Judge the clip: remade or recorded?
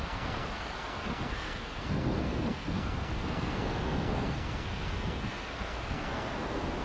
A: remade